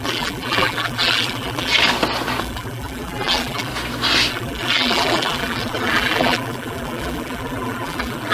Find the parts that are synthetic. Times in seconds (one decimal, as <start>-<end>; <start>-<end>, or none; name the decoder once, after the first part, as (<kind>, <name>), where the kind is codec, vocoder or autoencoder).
0.0-1.7 (vocoder, BigVGAN v2); 2.4-3.7; 4.3-8.3

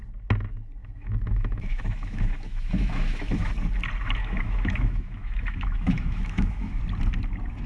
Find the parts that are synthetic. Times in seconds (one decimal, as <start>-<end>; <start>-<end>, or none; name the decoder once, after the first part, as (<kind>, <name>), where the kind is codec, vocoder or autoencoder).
0.8-3.5 (autoencoder, DAC-VAE); 4.2-6.8